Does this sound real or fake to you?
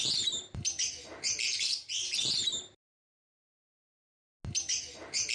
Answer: real